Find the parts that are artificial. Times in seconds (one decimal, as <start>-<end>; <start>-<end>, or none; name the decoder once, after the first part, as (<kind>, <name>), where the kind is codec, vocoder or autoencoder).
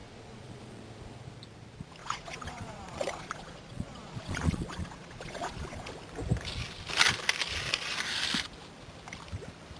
0.0-0.8 (vocoder, Vocos); 2.0-5.9